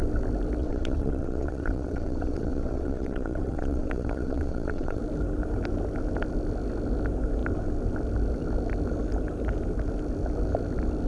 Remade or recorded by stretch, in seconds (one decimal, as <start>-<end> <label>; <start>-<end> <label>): 0.0-0.6 recorded; 0.6-5.0 remade; 5.0-11.1 recorded